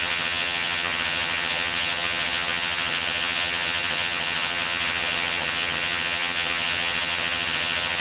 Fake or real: fake